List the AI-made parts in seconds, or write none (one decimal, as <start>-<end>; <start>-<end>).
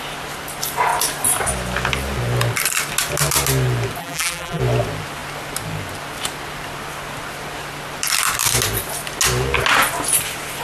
4.0-4.6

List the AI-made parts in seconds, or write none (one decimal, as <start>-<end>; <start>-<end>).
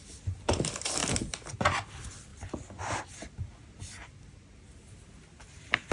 none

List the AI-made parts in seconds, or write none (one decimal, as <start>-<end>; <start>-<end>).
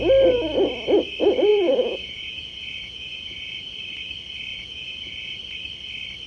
1.5-3.7; 4.5-5.4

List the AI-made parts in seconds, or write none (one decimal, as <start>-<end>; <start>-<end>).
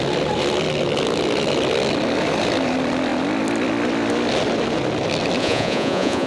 5.4-6.3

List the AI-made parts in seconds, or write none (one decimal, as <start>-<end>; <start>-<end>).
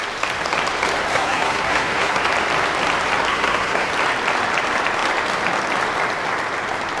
1.1-2.2; 3.3-3.9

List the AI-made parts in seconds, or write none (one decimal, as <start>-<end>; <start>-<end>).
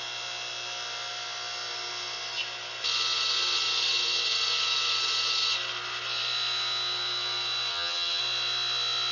7.7-8.2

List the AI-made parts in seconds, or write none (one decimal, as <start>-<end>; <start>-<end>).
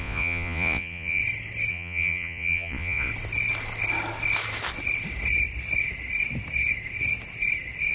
0.0-1.2; 1.7-3.1